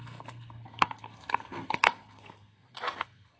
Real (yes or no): no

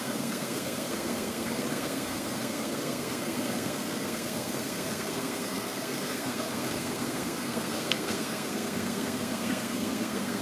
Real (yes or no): no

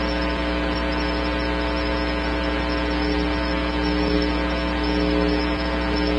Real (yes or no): yes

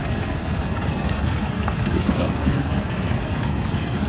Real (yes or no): no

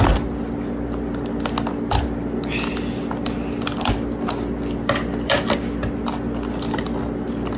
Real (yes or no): yes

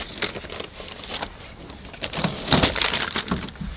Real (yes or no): yes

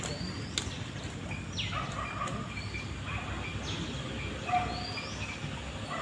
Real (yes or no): yes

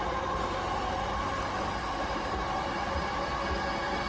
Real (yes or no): yes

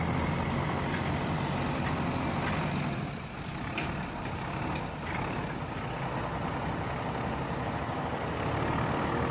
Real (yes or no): yes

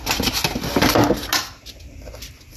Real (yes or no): yes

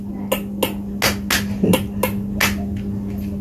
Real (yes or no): yes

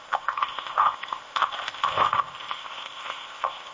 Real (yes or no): no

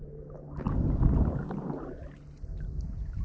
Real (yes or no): yes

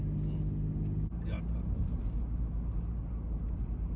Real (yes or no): yes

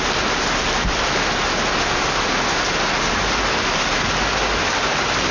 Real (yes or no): yes